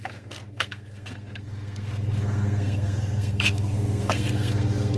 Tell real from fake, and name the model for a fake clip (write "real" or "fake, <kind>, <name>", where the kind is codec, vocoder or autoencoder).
fake, codec, SNAC